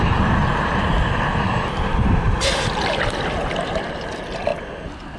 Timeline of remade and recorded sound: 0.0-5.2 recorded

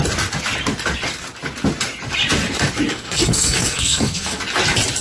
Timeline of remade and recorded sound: 0.0-2.9 recorded; 2.9-4.4 remade; 4.4-5.0 recorded

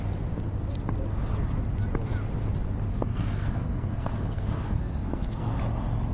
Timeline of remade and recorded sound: 0.0-2.9 recorded; 2.9-5.6 remade; 5.6-6.1 recorded

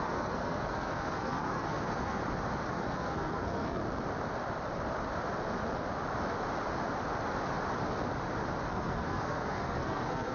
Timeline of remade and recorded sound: 0.0-2.2 remade; 2.2-2.7 recorded; 2.7-3.8 remade; 3.8-8.7 recorded; 8.7-10.3 remade

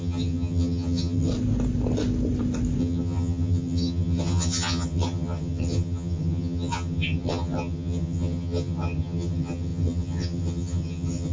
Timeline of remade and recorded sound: 0.0-1.3 remade; 1.3-2.8 recorded; 2.8-11.3 remade

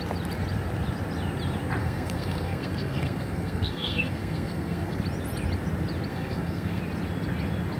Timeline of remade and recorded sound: 0.0-1.8 recorded; 1.8-5.0 remade; 5.0-6.1 recorded; 6.1-6.8 remade; 6.8-7.8 recorded